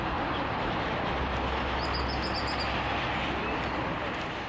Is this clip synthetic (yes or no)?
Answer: no